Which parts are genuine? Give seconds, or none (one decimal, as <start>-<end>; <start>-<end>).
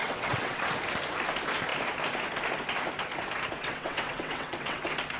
0.6-3.6; 4.8-5.2